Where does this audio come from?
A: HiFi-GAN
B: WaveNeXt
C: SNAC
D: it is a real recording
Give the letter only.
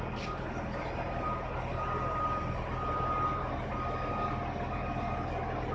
D